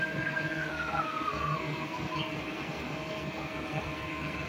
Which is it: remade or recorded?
remade